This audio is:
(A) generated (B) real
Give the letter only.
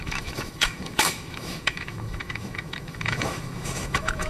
A